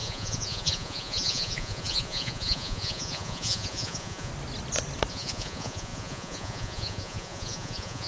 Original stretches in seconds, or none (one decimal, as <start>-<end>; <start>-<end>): 4.3-5.1